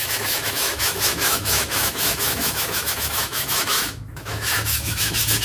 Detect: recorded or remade remade